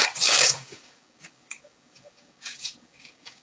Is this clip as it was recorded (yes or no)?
no